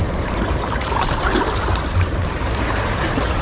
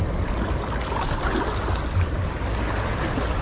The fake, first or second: first